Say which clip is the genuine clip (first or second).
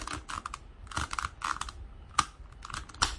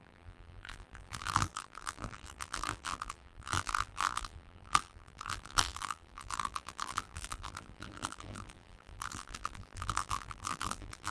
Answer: first